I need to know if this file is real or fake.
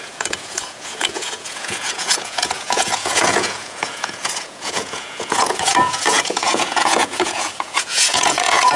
fake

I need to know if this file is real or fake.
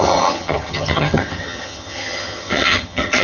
fake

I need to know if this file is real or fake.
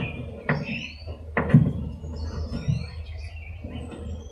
real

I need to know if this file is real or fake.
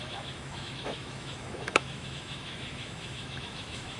fake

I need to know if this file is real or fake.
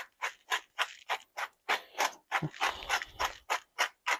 real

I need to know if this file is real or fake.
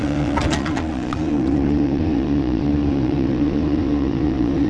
fake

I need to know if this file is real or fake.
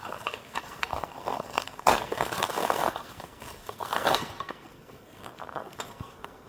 fake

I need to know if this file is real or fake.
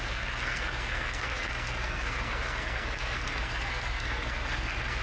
fake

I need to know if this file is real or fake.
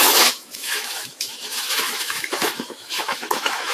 fake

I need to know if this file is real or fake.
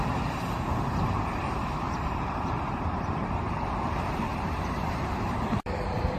fake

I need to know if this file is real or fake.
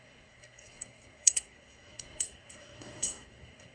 fake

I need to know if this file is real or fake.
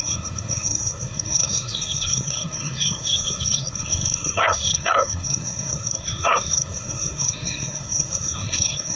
fake